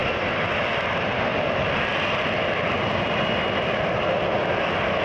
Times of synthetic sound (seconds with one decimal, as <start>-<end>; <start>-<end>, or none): none